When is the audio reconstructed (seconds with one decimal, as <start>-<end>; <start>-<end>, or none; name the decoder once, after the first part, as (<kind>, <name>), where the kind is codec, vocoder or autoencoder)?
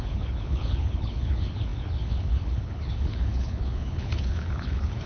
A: 0.0-5.1 (codec, HILCodec)